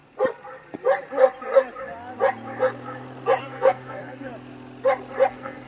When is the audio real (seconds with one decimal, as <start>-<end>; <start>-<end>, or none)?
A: 0.0-3.4; 4.3-5.3